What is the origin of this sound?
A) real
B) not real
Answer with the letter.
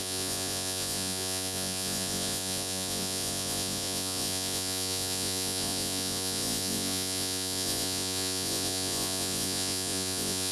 B